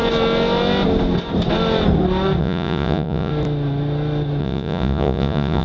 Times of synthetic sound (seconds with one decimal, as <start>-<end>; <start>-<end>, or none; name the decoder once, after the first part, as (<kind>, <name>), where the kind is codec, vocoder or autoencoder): 2.4-3.3 (vocoder, Vocos); 4.4-5.6